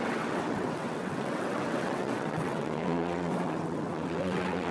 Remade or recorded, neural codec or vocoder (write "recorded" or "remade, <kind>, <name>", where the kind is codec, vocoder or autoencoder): remade, vocoder, WaveNeXt